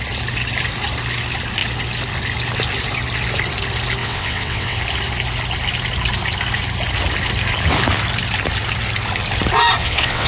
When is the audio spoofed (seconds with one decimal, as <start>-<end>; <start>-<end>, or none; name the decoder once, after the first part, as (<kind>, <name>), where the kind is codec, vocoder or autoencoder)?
4.0-4.8 (vocoder, WaveNeXt); 9.8-10.3